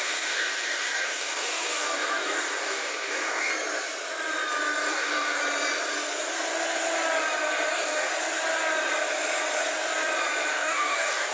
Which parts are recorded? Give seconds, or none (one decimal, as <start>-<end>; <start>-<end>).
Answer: 3.5-4.9; 5.4-7.7; 8.1-10.5